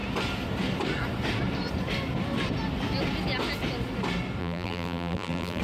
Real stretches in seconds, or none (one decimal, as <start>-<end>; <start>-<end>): 0.0-4.4